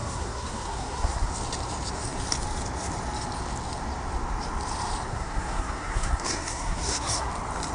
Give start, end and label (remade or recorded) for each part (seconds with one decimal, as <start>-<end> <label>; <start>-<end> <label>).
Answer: 0.0-1.3 remade; 1.3-5.1 recorded; 5.1-7.3 remade; 7.3-7.7 recorded